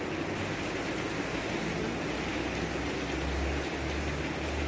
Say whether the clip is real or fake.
real